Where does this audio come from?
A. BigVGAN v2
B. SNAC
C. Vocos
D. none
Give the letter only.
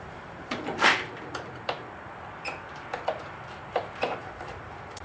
A